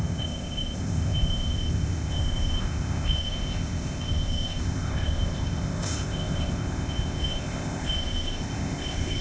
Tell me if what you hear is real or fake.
fake